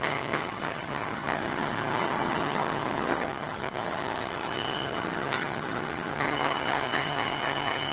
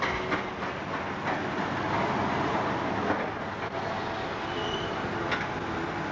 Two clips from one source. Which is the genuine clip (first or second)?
second